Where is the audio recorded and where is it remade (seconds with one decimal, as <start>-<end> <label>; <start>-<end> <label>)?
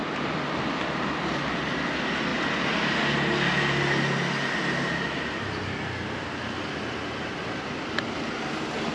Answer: 0.0-0.8 remade; 0.8-8.9 recorded